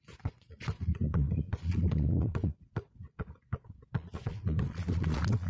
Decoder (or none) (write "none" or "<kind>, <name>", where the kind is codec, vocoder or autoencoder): vocoder, Vocos